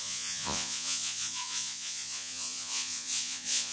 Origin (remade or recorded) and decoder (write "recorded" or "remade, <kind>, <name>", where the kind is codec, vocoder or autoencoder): remade, vocoder, Vocos